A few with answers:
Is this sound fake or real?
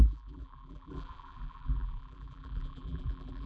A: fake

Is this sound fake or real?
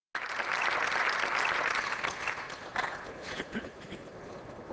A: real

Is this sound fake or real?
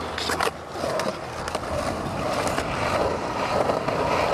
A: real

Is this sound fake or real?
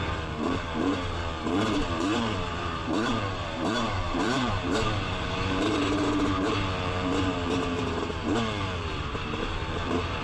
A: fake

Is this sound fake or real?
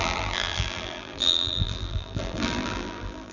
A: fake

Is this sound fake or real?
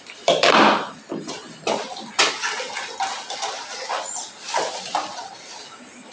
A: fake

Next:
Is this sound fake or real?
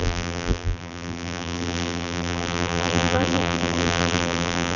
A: fake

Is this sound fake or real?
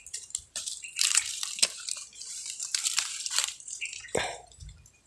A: fake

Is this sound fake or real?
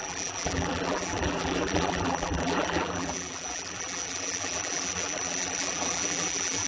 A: fake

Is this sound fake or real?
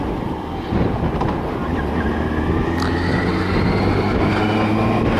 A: real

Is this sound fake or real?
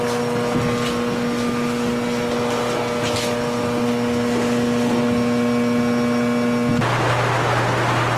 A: real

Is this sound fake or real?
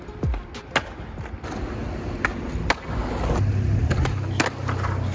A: real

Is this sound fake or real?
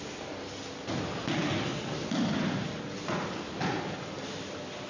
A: real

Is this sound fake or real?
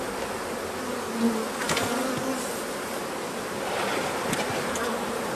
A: real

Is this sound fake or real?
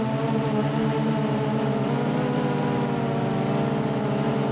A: fake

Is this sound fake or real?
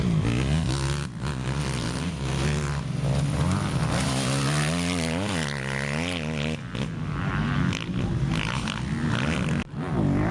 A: real